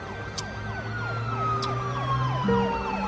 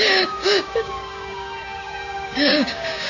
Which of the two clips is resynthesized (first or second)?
second